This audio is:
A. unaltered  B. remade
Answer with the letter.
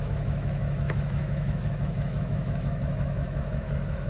B